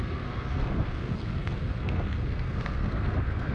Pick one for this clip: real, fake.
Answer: fake